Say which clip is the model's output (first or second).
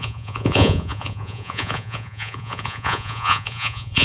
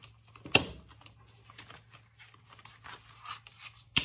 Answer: first